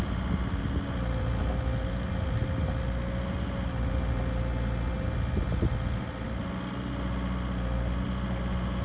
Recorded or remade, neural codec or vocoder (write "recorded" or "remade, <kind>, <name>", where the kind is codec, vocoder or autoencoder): recorded